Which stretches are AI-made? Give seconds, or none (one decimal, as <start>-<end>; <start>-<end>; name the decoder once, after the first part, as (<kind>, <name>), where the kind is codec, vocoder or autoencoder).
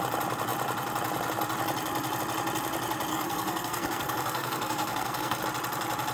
3.1-5.4 (codec, SNAC)